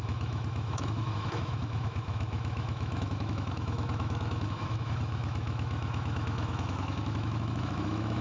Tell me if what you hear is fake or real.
fake